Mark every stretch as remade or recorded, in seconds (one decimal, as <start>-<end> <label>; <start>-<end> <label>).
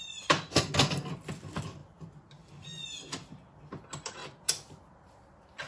0.0-0.5 recorded; 0.5-1.1 remade; 1.1-5.7 recorded